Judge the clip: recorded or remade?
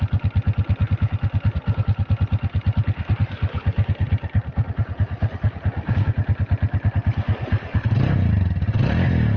recorded